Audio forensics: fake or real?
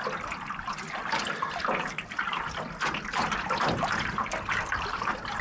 real